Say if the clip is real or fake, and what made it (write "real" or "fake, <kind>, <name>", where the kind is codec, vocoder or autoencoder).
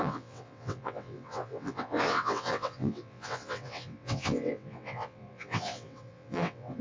fake, vocoder, WaveNeXt